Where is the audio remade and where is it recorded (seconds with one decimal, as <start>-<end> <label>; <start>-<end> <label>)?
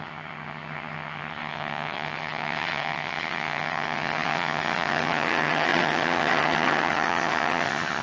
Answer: 0.0-8.0 remade